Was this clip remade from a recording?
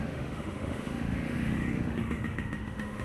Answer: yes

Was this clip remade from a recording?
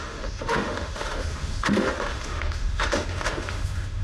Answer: yes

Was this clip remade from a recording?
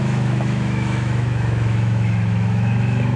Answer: yes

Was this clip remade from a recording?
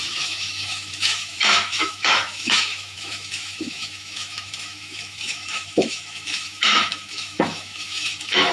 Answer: yes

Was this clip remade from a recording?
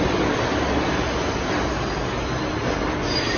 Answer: no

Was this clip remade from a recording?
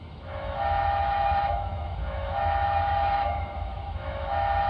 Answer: yes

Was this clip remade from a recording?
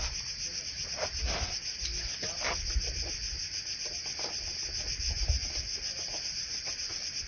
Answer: no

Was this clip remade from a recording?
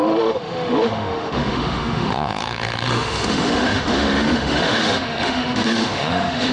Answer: yes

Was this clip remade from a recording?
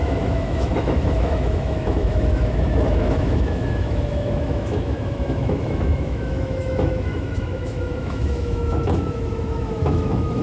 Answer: yes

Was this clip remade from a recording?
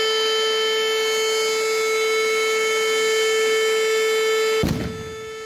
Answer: no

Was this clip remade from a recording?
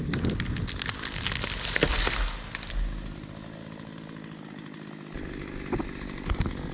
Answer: no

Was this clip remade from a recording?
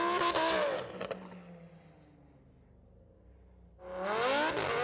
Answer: no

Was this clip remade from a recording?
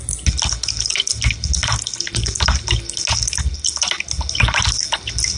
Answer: no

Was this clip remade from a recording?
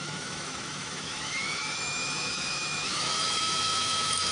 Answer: yes